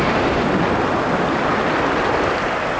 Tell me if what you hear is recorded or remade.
recorded